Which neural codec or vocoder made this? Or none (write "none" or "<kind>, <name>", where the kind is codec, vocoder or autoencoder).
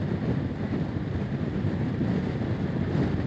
none